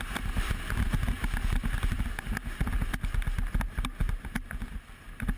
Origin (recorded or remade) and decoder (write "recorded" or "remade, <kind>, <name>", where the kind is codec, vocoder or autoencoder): recorded